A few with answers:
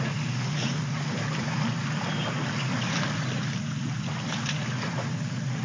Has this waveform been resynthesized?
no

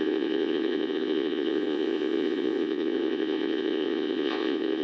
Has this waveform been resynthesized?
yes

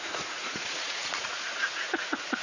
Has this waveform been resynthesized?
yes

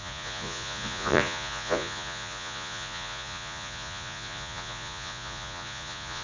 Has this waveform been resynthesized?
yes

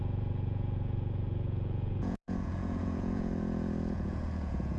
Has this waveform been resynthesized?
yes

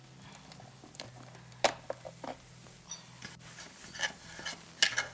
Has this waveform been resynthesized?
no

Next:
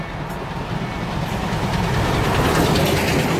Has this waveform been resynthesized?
no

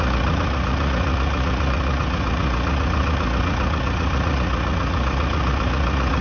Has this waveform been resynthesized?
yes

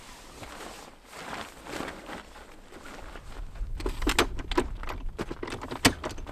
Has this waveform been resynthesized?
no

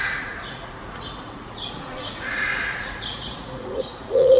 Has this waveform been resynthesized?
yes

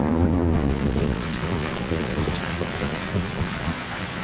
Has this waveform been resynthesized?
yes